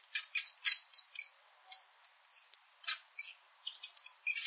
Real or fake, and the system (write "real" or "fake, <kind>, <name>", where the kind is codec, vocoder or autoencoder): real